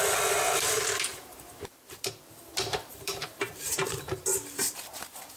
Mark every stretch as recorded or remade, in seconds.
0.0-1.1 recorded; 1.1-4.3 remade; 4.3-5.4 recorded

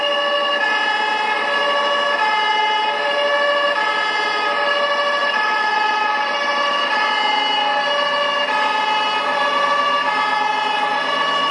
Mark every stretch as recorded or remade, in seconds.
0.0-5.2 recorded; 5.2-6.9 remade; 6.9-11.5 recorded

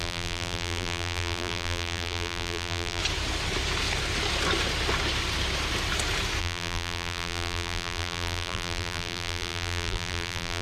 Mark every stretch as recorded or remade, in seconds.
0.0-3.0 remade; 3.0-6.4 recorded; 6.4-10.6 remade

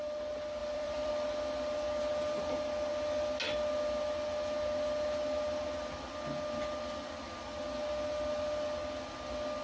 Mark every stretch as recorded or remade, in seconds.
0.0-0.6 recorded; 0.6-1.1 remade; 1.1-9.6 recorded

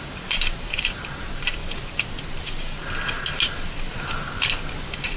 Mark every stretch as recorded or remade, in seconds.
0.0-1.6 remade; 1.6-4.7 recorded; 4.7-5.2 remade

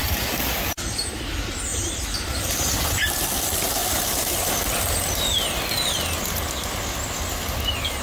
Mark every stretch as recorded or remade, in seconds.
0.0-1.7 recorded; 1.7-2.8 remade; 2.8-3.8 recorded; 3.8-4.4 remade; 4.4-8.0 recorded

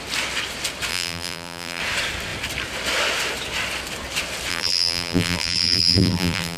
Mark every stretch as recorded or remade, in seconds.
0.0-0.9 recorded; 0.9-1.8 remade; 1.8-4.5 recorded; 4.5-6.6 remade